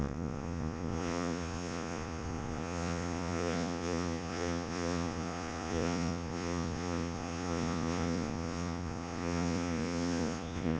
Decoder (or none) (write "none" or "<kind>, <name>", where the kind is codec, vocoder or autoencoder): vocoder, Vocos